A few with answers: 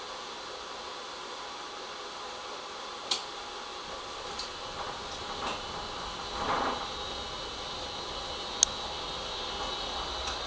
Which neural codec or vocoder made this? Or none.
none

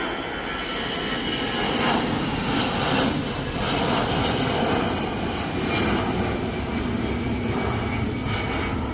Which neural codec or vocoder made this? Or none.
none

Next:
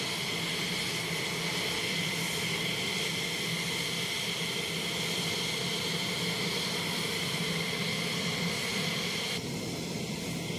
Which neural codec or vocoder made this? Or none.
none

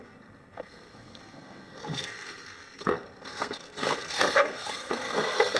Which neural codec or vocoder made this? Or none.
codec, SNAC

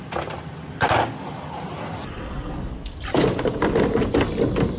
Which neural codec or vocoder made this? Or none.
none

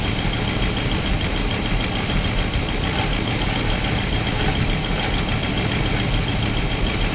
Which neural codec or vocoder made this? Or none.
none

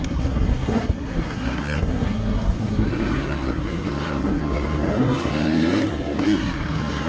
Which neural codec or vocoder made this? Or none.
codec, SNAC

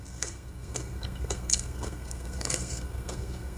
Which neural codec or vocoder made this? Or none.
codec, SNAC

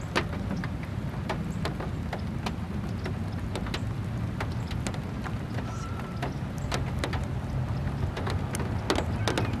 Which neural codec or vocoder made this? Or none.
none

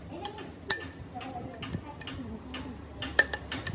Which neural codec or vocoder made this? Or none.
none